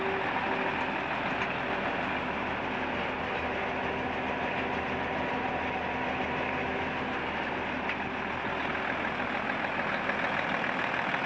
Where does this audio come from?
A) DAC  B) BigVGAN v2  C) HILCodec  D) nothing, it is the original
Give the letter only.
D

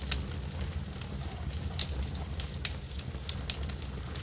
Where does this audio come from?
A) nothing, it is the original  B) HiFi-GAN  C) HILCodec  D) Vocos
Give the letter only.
A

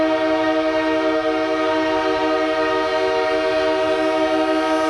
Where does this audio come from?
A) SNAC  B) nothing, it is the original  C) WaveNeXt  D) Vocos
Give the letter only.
B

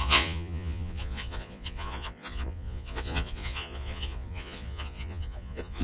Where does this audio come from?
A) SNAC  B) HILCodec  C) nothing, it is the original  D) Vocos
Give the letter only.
D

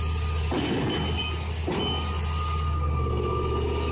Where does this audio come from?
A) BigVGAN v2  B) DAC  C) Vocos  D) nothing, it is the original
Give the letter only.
D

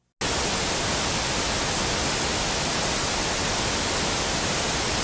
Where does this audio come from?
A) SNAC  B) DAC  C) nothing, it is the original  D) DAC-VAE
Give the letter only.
C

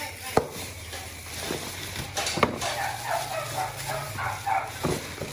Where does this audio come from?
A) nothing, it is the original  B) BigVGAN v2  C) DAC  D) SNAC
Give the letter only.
A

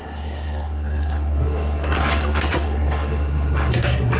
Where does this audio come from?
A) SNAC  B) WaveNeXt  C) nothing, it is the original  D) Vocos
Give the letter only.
A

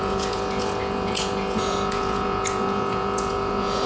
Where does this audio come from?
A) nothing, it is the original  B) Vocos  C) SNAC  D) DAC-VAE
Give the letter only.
B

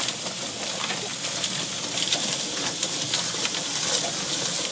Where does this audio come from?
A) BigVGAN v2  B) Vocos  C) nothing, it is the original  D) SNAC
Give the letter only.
C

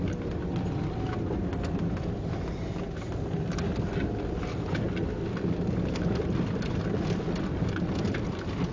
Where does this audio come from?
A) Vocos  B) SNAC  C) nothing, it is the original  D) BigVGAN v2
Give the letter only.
C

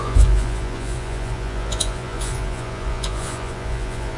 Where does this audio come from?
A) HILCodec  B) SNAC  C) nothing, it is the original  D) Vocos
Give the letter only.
D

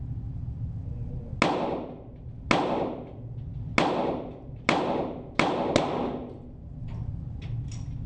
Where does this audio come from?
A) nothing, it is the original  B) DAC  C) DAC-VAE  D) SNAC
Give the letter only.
A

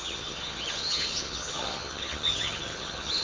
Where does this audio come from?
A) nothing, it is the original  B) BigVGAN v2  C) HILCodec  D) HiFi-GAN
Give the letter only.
D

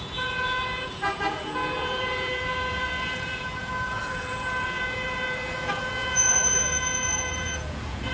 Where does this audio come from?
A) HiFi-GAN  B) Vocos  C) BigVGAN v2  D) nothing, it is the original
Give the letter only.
B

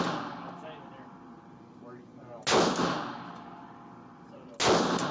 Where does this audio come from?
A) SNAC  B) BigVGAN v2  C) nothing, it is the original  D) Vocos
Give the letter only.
C